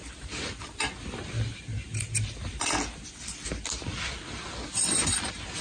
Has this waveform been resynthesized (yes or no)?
no